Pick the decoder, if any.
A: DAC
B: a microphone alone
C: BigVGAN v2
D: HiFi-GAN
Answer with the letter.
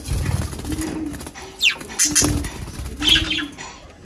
B